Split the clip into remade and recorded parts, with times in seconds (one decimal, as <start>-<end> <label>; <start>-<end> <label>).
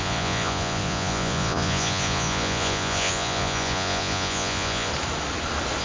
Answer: 0.0-4.9 remade; 4.9-5.8 recorded